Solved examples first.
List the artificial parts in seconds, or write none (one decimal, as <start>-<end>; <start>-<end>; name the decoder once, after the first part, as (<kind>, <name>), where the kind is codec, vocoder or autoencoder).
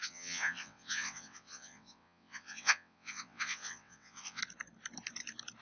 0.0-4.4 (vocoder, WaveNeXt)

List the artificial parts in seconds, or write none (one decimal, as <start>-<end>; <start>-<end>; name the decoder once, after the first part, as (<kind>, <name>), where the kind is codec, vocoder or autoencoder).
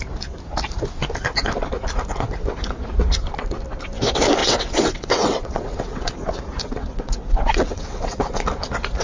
4.4-6.3 (vocoder, WaveNeXt); 6.8-8.2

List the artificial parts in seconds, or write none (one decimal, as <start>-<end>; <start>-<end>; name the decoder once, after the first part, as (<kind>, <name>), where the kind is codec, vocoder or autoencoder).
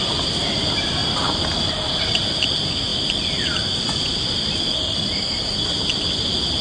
none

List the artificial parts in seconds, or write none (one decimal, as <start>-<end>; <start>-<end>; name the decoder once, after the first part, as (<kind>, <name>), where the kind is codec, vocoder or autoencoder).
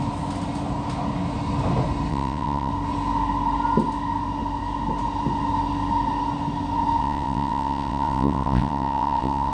2.1-2.7 (vocoder, WaveNeXt); 7.0-9.5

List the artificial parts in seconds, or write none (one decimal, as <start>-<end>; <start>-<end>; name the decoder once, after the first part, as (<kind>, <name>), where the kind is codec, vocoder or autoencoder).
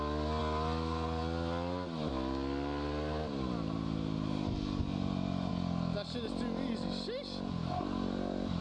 none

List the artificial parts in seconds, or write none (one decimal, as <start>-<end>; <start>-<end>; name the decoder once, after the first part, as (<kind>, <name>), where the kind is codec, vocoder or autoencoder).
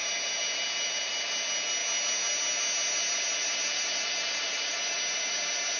none